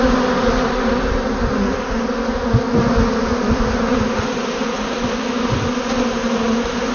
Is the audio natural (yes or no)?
yes